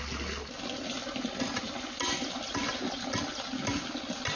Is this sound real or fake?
real